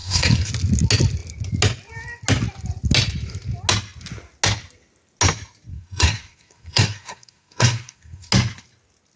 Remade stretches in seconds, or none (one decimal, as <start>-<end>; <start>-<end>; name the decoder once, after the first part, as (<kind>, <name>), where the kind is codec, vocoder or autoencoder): 0.0-0.5 (codec, SNAC); 5.7-8.3